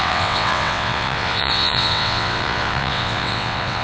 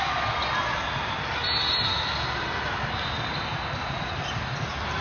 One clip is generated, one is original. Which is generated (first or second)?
first